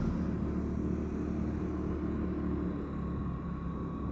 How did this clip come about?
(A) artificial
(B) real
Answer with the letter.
B